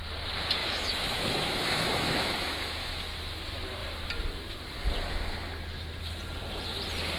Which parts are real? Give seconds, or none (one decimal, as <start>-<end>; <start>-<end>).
0.0-0.6; 3.1-7.2